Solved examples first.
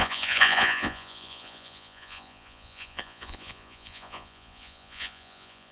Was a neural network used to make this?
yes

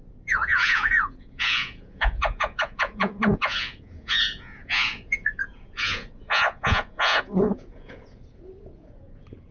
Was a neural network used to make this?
yes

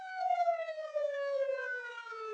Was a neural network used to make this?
yes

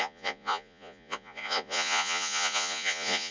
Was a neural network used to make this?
yes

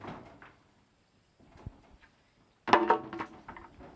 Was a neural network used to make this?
no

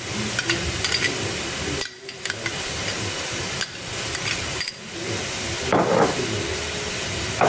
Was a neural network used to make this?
no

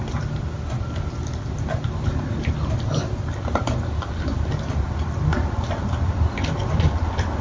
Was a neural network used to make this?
no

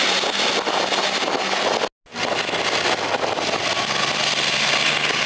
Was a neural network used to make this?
no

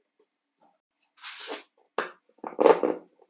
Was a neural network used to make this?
no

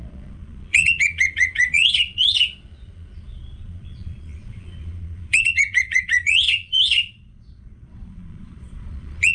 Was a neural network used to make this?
yes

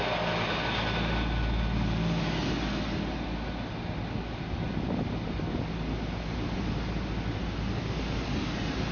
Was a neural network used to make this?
no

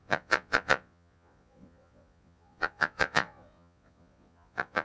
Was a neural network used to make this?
yes